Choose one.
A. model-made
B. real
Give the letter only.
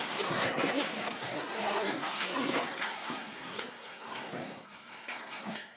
A